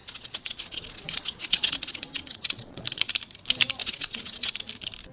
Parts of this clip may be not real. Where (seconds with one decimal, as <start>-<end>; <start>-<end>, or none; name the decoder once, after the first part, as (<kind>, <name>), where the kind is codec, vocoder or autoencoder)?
0.0-3.1 (vocoder, Vocos); 3.8-4.5